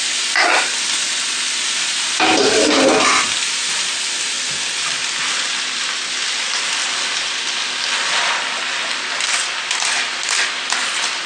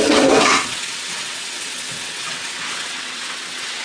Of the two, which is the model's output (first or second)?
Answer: second